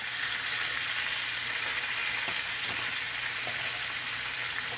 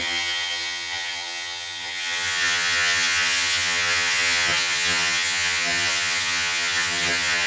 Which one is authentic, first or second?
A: first